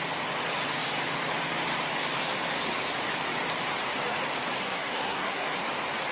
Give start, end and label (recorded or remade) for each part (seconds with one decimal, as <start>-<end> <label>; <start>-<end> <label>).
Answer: 0.0-4.6 recorded; 4.6-5.6 remade; 5.6-6.1 recorded